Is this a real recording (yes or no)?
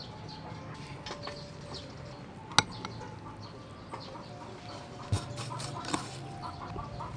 yes